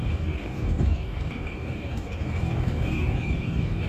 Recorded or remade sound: remade